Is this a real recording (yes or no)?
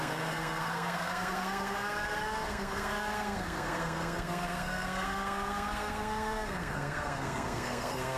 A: no